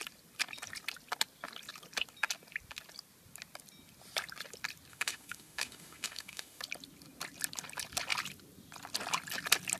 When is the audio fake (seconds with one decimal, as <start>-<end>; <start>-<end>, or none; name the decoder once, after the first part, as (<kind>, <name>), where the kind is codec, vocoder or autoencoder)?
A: 4.9-6.6 (autoencoder, DAC-VAE)